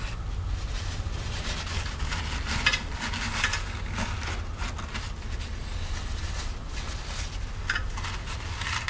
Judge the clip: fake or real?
real